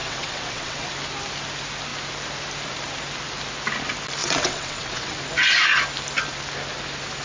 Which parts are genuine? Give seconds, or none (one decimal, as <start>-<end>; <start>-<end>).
0.9-4.2; 5.2-7.2